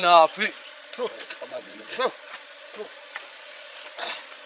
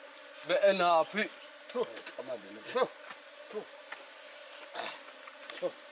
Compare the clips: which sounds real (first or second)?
second